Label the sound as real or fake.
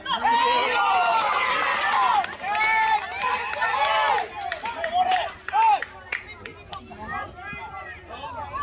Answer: real